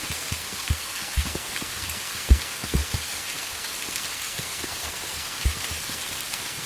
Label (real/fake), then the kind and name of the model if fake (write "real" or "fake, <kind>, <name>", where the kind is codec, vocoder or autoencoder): fake, codec, SNAC